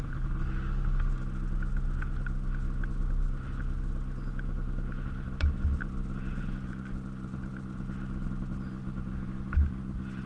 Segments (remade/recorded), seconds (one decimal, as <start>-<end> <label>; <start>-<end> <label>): 0.0-10.3 recorded